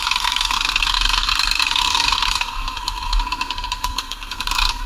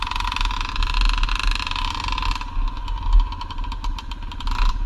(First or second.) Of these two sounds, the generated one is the first